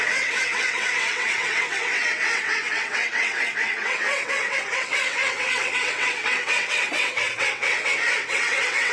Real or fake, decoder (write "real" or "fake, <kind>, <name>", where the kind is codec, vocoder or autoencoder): fake, vocoder, WaveNeXt